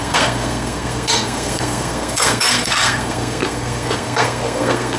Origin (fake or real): fake